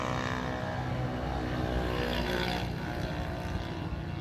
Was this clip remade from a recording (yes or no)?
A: no